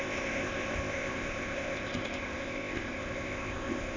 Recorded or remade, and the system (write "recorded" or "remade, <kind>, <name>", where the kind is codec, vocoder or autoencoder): remade, codec, ZipCodec